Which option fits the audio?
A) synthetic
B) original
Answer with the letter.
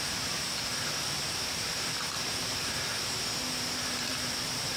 A